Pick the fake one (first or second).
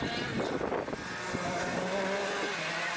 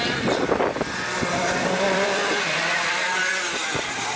second